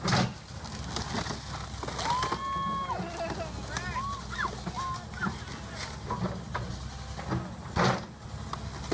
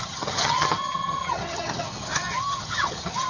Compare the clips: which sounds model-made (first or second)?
second